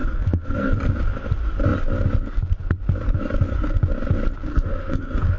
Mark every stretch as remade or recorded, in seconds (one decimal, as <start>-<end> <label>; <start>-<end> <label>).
0.0-0.8 remade; 0.8-4.5 recorded; 4.5-5.4 remade